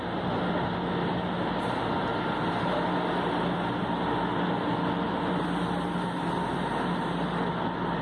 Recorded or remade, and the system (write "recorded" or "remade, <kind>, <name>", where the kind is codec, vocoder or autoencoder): recorded